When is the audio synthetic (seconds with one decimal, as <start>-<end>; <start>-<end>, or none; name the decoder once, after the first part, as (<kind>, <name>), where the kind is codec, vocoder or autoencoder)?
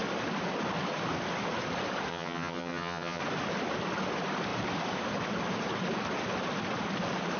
2.1-3.2 (vocoder, HiFi-GAN)